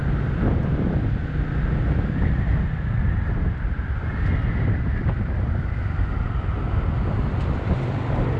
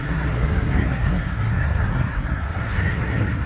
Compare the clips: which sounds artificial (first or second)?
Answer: second